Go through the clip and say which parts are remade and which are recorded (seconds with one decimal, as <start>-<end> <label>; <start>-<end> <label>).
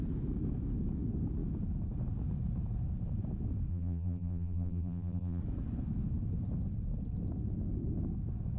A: 0.0-3.7 recorded; 3.7-5.4 remade; 5.4-8.6 recorded